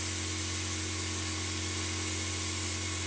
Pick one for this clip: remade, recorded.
recorded